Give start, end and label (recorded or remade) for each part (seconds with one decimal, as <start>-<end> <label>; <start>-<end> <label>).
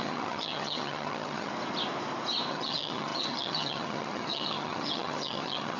0.0-1.5 remade; 1.5-2.5 recorded; 2.5-5.8 remade